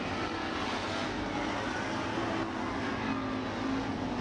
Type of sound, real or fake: real